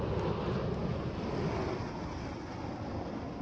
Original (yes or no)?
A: yes